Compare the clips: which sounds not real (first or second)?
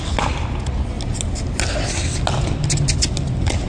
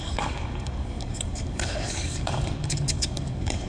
second